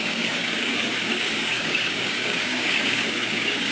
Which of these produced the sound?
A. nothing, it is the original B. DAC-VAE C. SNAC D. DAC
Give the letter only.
D